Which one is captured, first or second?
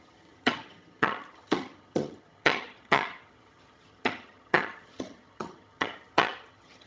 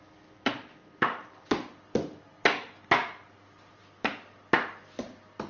second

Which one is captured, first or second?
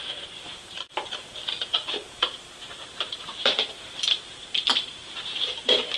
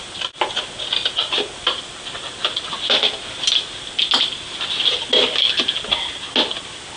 second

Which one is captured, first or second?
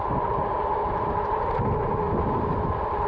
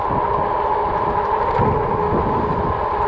second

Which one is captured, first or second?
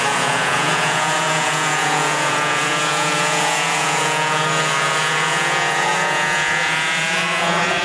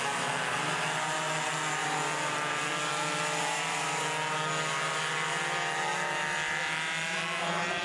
second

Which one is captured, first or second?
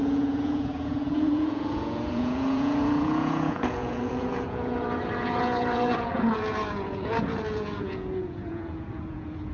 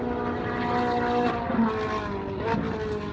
second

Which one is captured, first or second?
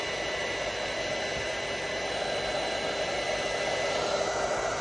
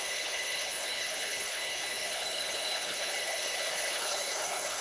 first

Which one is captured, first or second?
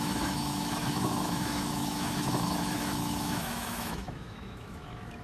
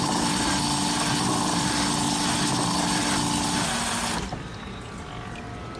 second